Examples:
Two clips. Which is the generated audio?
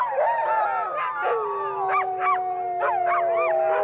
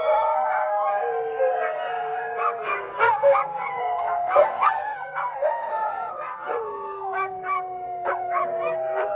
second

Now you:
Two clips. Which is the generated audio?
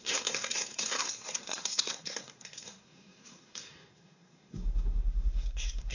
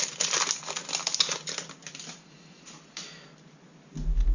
first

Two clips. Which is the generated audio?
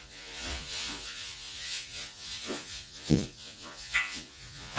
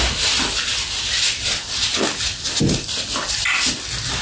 first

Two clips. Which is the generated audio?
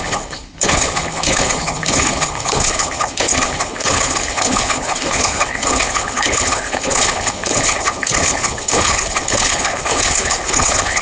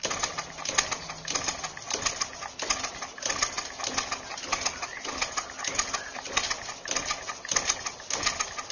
first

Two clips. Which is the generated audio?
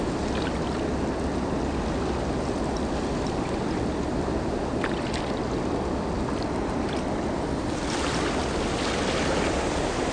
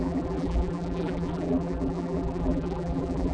second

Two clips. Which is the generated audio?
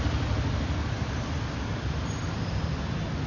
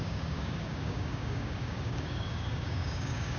second